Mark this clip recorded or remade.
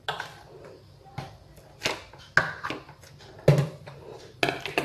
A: recorded